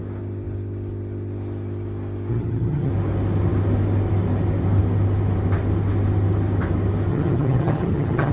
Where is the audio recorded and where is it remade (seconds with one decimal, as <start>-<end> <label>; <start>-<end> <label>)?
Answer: 0.0-2.3 recorded; 2.3-2.9 remade; 2.9-7.1 recorded; 7.1-8.3 remade